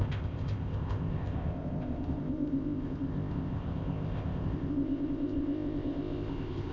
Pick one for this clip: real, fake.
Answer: fake